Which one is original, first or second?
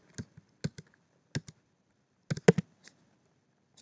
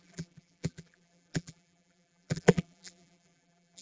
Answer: first